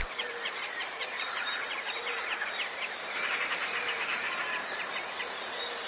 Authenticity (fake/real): fake